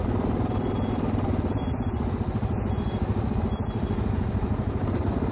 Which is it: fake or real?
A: real